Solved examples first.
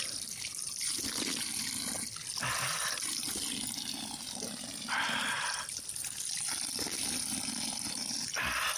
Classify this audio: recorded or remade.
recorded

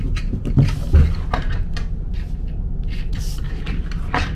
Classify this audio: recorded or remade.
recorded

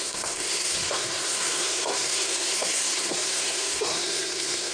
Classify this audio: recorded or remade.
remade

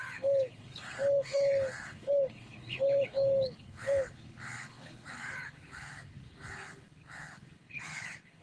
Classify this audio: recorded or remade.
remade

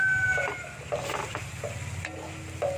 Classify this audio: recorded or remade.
recorded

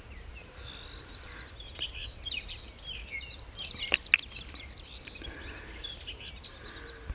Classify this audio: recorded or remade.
recorded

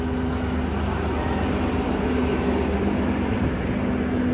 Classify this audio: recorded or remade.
recorded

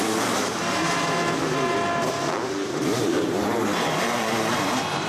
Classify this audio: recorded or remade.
remade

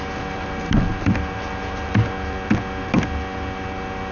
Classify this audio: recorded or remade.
recorded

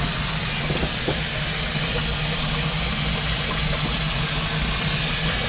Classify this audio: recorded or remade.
recorded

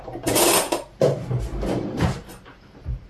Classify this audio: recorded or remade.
recorded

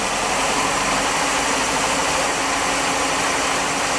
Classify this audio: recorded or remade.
recorded